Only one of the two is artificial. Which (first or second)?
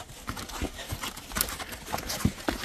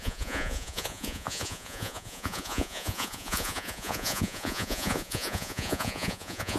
second